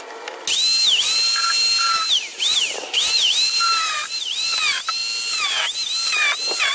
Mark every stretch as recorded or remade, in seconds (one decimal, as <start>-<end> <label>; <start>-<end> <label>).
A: 0.0-2.3 recorded; 2.3-4.6 remade; 4.6-6.7 recorded